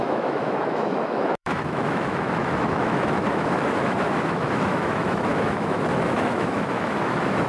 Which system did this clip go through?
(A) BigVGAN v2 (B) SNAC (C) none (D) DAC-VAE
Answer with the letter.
D